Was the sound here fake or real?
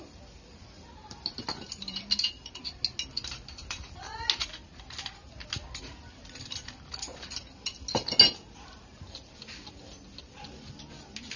real